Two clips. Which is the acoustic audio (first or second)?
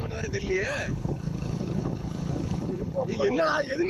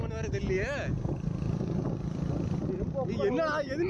second